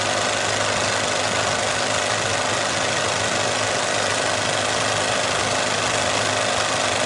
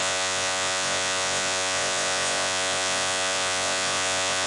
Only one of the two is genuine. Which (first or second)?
first